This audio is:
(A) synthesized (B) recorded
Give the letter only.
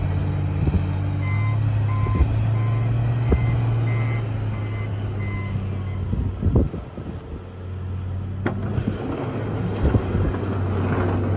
B